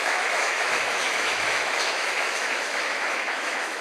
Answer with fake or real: fake